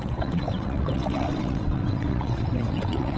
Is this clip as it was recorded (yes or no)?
no